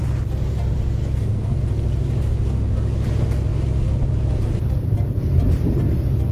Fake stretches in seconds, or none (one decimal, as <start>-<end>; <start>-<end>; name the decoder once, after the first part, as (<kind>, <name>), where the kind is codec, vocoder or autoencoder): 1.0-1.6 (codec, SNAC)